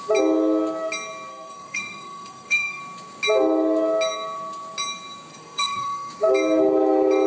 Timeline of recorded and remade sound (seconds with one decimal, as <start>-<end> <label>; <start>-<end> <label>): 0.0-1.3 recorded; 1.3-2.8 remade; 2.8-5.3 recorded; 5.3-6.1 remade; 6.1-7.3 recorded